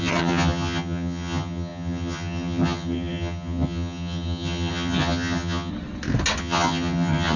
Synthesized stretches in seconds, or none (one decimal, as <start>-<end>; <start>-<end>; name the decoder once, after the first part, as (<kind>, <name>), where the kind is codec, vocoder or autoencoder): 0.0-5.7 (vocoder, HiFi-GAN); 6.4-7.4